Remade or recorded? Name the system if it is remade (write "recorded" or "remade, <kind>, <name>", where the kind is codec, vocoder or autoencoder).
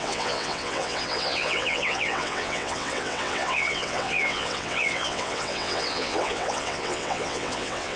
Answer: remade, vocoder, WaveNeXt